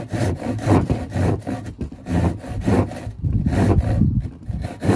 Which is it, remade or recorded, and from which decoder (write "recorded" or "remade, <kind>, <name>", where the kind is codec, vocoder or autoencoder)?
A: remade, vocoder, BigVGAN v2